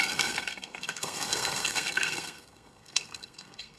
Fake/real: fake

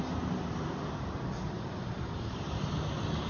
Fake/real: real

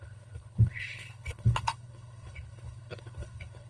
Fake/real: fake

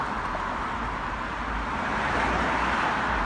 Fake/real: real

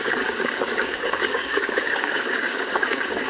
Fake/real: fake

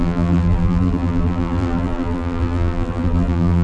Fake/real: fake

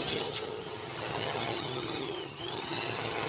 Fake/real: fake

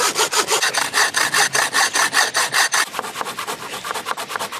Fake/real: real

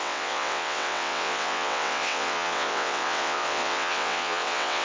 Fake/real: fake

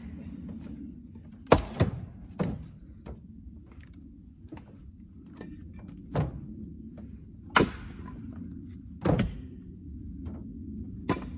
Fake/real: real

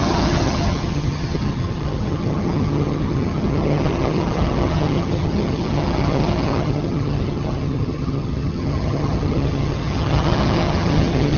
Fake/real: fake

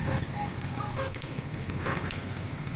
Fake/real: fake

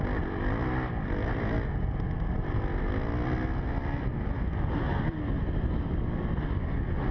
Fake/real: real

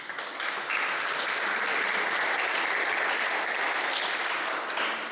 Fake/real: real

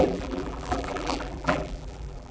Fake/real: fake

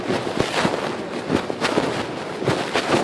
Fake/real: real